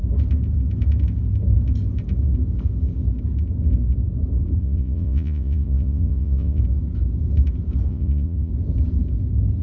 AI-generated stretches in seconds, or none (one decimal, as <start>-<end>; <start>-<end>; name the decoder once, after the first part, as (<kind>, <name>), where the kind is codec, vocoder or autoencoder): 4.6-6.6 (vocoder, Vocos); 7.9-8.5